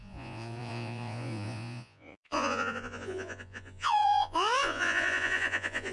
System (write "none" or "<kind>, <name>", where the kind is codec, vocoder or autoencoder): vocoder, Vocos